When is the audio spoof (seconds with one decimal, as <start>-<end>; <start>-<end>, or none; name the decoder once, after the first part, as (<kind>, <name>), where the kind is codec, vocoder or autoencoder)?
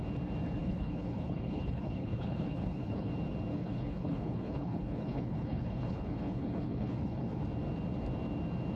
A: 0.6-3.1 (codec, HILCodec); 3.5-7.4